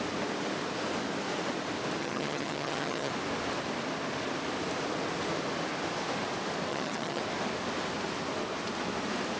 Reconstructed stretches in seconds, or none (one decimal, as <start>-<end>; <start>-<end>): 2.0-3.1; 6.7-7.2